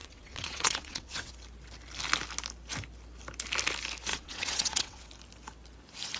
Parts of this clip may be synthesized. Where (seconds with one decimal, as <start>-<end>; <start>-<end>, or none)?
0.0-1.3; 4.1-5.1